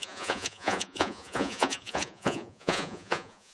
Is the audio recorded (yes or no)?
no